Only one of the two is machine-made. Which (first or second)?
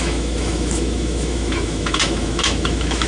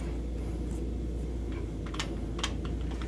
first